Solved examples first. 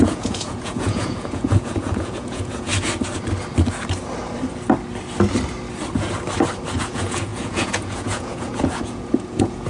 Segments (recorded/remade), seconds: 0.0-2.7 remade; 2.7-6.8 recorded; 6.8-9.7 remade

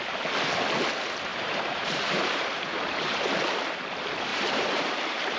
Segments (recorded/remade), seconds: 0.0-1.3 recorded; 1.3-3.3 remade; 3.3-4.3 recorded; 4.3-5.4 remade